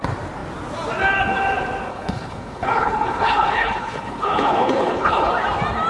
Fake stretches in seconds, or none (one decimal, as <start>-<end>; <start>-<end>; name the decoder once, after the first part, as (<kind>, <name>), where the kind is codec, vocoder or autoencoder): 1.9-5.3 (codec, HILCodec)